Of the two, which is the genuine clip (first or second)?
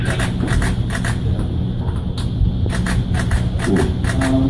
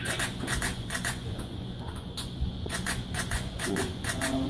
first